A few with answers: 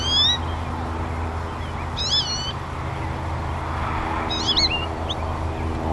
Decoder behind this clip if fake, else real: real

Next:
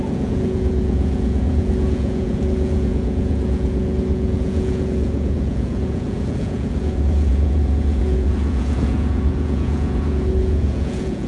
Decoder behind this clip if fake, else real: fake, vocoder, Vocos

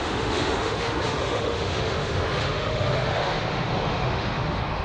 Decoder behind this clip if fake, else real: fake, autoencoder, DAC-VAE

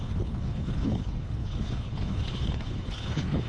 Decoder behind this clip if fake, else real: fake, codec, HILCodec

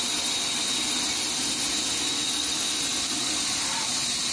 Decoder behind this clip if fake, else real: real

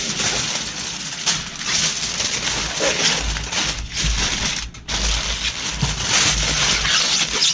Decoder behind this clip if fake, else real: real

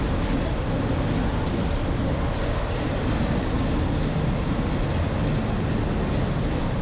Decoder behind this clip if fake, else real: real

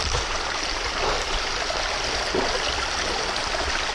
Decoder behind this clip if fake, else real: real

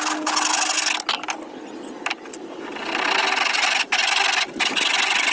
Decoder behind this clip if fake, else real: real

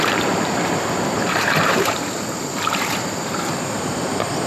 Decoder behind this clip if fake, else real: fake, vocoder, BigVGAN v2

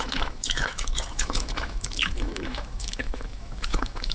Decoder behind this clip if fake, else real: fake, autoencoder, DAC-VAE